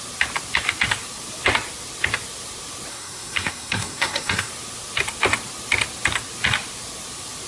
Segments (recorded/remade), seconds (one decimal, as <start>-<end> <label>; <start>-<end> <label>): 0.0-2.9 recorded; 2.9-4.5 remade; 4.5-7.5 recorded